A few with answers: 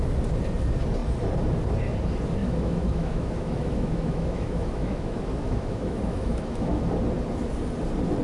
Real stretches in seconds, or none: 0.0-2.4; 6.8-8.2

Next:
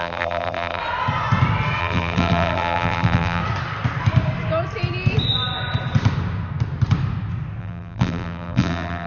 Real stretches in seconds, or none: 0.8-1.8; 3.4-7.6

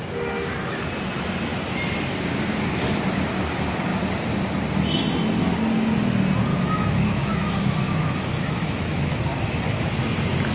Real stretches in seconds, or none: 0.0-6.5; 9.9-10.5

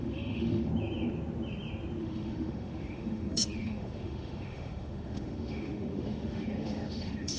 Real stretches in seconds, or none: 0.7-2.0

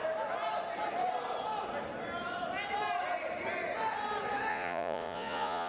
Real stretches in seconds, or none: 0.0-4.5

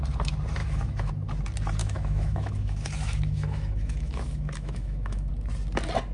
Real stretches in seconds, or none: 0.0-0.6; 1.1-1.8; 5.3-6.1

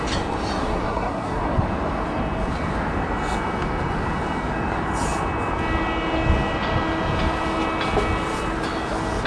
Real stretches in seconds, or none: 0.0-0.6; 1.4-9.3

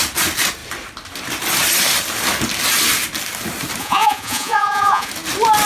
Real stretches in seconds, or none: 0.0-3.8; 5.1-5.7